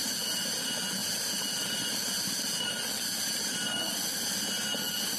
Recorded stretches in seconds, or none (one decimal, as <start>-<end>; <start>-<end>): 0.0-5.2